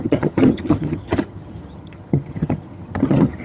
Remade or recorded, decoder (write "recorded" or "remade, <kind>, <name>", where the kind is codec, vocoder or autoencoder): remade, vocoder, HiFi-GAN